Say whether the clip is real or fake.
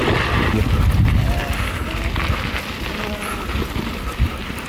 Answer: real